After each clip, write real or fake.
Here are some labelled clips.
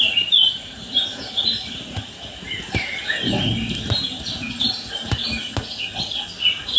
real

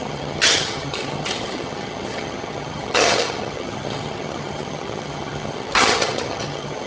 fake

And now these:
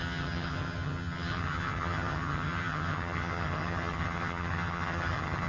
fake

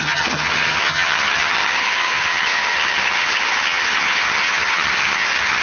fake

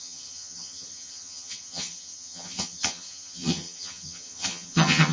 fake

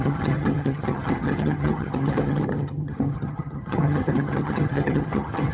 fake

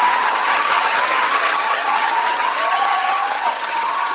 fake